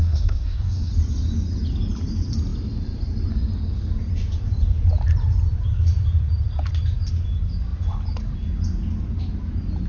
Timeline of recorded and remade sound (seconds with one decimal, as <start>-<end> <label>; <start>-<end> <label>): 0.0-0.9 remade; 0.9-9.9 recorded